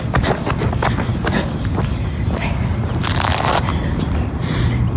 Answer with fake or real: real